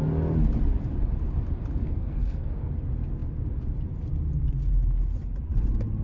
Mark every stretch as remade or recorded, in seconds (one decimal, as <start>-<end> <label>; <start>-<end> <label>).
0.0-1.8 recorded; 1.8-2.7 remade; 2.7-6.0 recorded